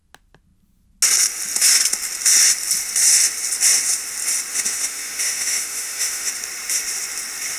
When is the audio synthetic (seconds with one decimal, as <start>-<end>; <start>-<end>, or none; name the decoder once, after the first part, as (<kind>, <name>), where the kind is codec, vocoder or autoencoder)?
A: 4.5-6.3 (autoencoder, DAC-VAE)